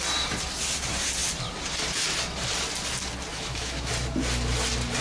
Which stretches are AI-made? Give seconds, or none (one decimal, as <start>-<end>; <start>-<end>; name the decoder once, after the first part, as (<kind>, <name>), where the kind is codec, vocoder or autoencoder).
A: 3.3-3.9 (autoencoder, DAC-VAE)